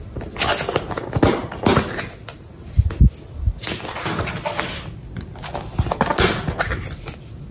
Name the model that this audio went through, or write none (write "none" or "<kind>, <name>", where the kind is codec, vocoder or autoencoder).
none